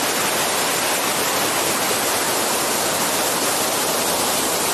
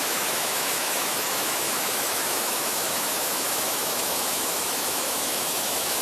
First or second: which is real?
first